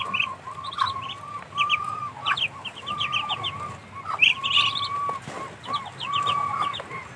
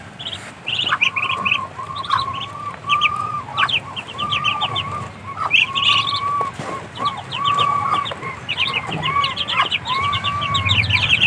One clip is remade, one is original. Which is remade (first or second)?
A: second